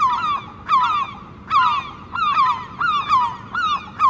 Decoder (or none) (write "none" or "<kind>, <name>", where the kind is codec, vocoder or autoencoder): none